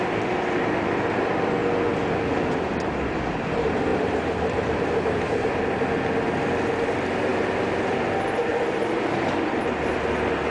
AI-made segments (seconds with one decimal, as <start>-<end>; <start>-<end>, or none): 8.5-9.0